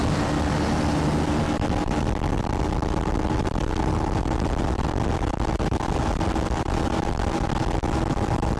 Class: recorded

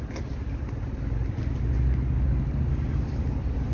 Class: recorded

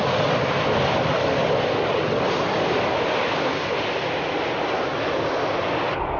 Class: recorded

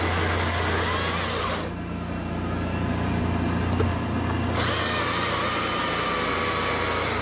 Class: recorded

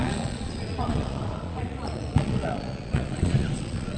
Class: remade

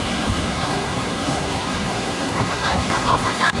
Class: remade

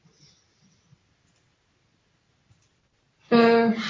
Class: recorded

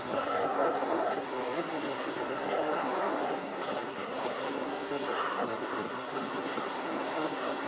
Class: remade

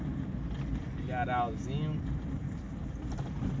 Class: recorded